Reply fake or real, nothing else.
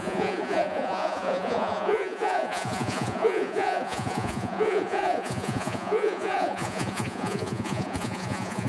fake